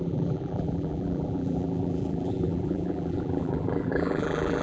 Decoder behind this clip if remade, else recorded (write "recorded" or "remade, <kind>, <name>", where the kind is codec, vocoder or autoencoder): remade, vocoder, BigVGAN v2